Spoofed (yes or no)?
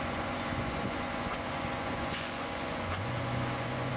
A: yes